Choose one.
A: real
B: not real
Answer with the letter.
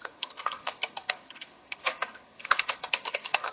B